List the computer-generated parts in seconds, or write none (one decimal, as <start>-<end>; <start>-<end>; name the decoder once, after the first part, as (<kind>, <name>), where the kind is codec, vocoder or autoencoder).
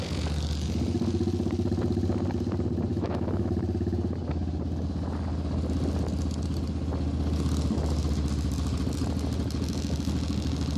2.9-3.5 (autoencoder, DAC-VAE)